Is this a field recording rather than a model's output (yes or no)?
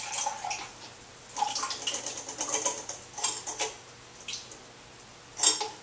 yes